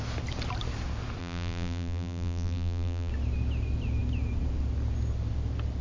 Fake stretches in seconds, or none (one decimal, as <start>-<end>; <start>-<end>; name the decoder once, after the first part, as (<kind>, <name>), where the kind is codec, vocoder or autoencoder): 1.2-3.1 (vocoder, BigVGAN v2)